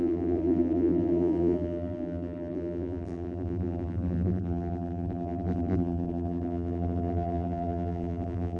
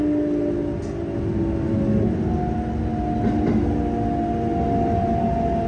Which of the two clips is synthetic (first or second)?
first